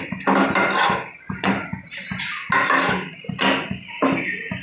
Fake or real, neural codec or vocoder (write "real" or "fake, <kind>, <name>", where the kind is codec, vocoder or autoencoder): real